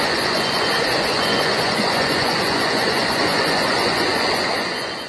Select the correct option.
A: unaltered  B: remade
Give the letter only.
B